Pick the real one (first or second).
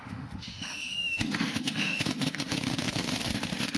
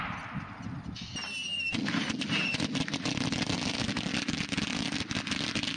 second